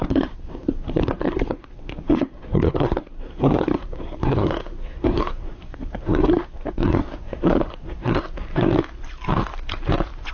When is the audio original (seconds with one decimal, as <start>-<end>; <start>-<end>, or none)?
8.7-10.3